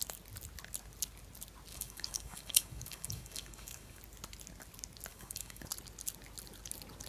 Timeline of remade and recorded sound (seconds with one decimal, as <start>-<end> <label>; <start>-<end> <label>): 0.0-1.7 recorded; 1.7-4.0 remade; 4.0-5.1 recorded; 5.1-5.7 remade; 5.7-7.1 recorded